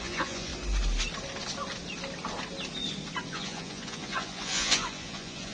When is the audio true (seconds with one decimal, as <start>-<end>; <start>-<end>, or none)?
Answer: 0.5-3.3